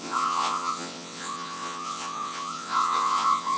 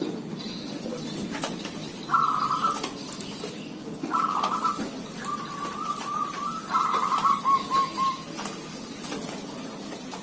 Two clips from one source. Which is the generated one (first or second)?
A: first